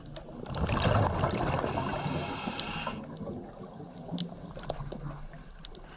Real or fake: real